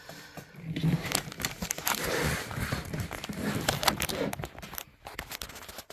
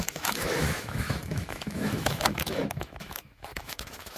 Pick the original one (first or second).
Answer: first